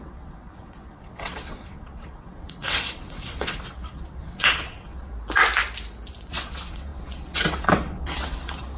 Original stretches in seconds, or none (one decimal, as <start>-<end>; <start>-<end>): 5.1-6.2